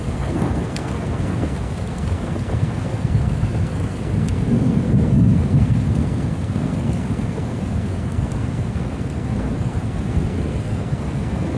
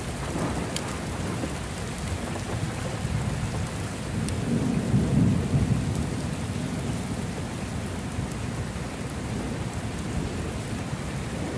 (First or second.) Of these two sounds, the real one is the second